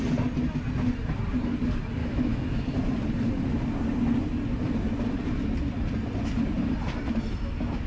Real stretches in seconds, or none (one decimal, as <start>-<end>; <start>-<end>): 0.0-2.0; 2.7-7.9